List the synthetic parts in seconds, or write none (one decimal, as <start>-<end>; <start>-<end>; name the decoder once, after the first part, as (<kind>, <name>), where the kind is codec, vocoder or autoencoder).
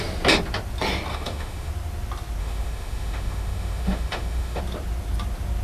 1.1-1.7 (autoencoder, DAC-VAE); 2.4-4.6